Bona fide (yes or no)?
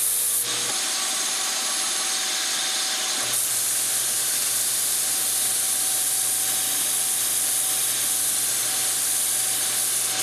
yes